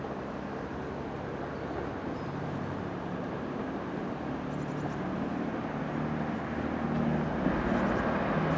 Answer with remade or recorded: recorded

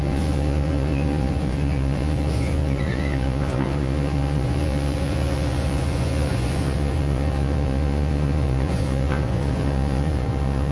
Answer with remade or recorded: remade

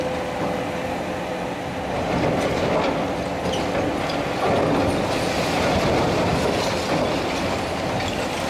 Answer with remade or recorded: recorded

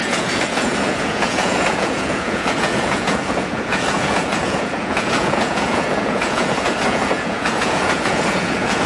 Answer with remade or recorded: remade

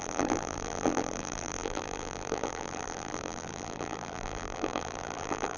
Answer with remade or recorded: remade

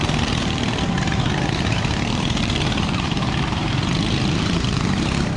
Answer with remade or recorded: remade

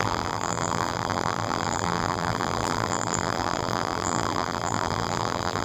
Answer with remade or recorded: remade